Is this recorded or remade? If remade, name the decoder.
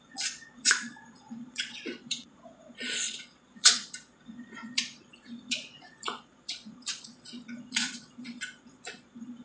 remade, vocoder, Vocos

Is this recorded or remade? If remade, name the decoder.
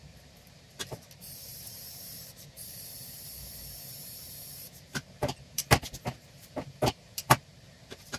remade, vocoder, BigVGAN v2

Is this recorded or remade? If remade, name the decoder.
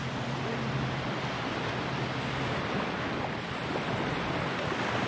recorded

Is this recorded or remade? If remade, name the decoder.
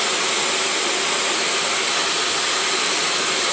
recorded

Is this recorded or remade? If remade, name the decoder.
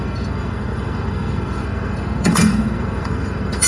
remade, codec, SNAC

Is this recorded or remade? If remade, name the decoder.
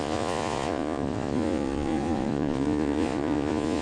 remade, vocoder, Vocos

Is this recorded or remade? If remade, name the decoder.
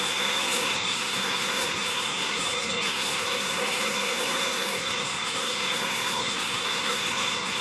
remade, codec, SNAC